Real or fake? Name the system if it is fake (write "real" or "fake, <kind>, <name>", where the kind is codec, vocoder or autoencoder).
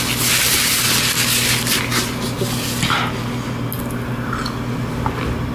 real